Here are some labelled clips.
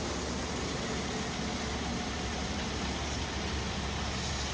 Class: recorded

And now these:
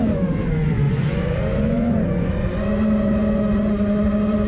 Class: remade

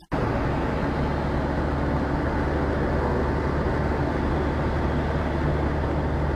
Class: recorded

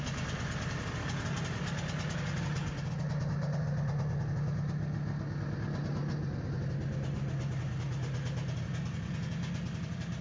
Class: recorded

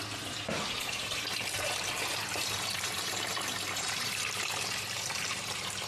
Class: remade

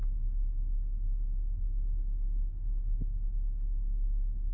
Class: recorded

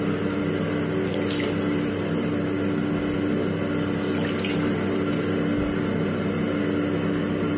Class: recorded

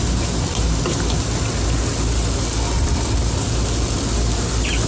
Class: recorded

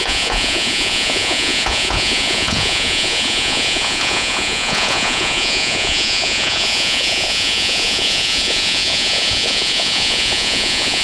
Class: remade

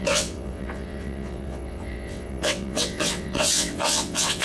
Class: remade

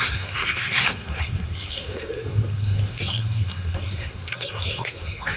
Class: remade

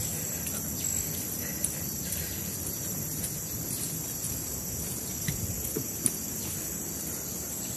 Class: recorded